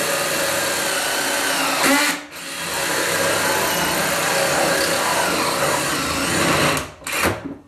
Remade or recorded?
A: recorded